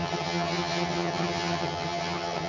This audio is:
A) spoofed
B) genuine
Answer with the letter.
A